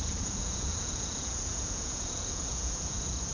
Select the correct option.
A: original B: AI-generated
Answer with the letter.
B